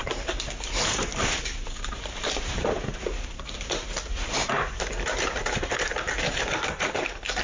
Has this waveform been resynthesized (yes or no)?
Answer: yes